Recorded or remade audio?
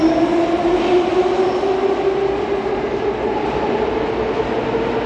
recorded